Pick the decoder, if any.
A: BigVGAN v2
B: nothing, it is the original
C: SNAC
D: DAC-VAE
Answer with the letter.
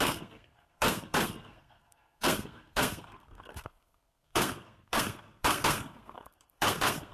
C